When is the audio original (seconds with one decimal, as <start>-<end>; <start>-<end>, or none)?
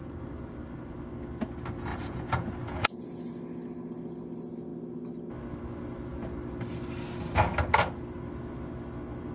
0.0-1.9; 3.3-9.3